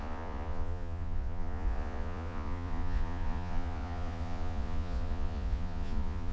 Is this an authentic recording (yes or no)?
no